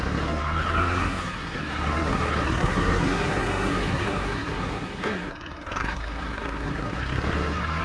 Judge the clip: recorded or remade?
remade